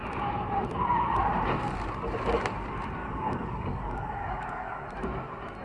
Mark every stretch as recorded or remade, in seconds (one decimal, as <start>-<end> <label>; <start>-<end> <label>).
0.0-3.0 recorded; 3.0-4.8 remade; 4.8-5.6 recorded